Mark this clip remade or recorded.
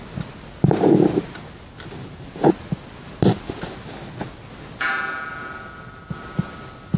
recorded